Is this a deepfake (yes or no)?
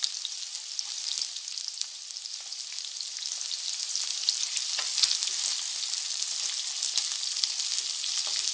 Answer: no